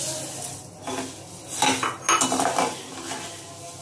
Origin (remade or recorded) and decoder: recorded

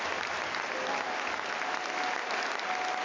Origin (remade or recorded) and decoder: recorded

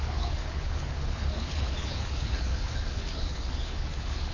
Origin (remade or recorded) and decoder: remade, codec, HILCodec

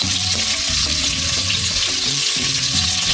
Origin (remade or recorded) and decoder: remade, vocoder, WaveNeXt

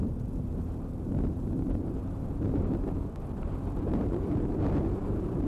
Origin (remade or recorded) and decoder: remade, vocoder, BigVGAN v2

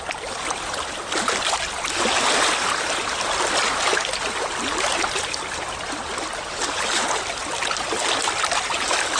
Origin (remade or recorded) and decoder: recorded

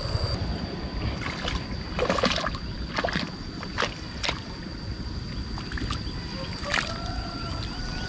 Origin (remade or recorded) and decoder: recorded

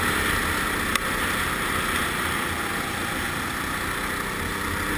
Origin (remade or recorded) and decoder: recorded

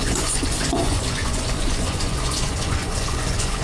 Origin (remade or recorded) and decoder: remade, vocoder, Vocos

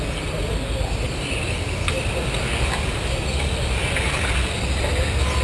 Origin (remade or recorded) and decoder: recorded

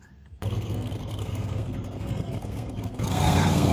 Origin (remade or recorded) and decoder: remade, codec, SNAC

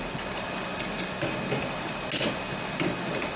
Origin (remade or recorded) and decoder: recorded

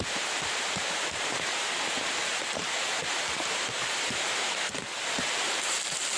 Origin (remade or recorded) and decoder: remade, vocoder, BigVGAN v2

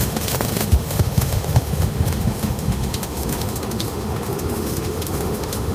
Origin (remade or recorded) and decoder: remade, autoencoder, DAC-VAE